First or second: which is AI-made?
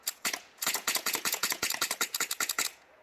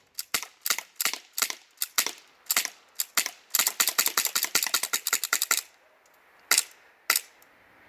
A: first